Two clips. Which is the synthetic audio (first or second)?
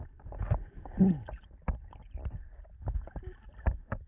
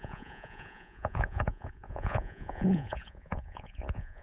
second